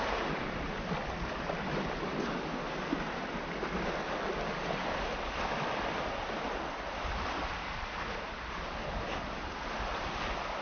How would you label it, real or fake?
real